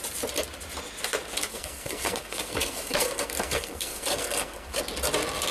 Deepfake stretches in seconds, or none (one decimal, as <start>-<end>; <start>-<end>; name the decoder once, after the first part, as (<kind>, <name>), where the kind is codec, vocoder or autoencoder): 1.5-4.8 (codec, SNAC)